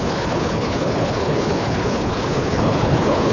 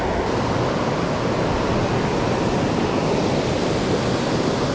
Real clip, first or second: second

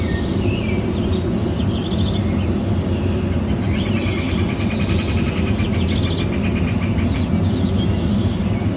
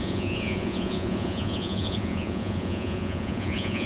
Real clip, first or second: first